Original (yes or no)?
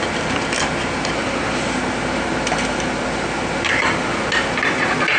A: yes